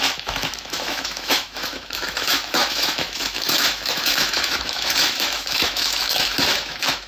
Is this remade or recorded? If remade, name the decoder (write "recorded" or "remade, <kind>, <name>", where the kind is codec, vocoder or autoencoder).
remade, autoencoder, DAC-VAE